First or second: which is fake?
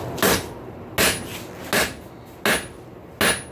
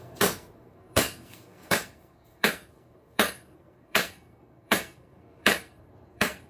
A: second